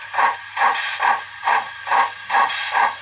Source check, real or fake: real